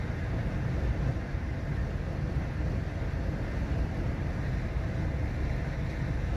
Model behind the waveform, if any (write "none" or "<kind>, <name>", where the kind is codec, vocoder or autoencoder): none